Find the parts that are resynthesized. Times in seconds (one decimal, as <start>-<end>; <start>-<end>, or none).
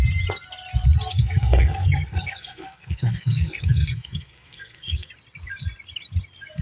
1.1-5.1